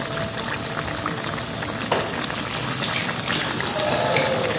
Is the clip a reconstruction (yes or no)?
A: no